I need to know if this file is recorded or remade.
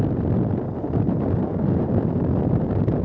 recorded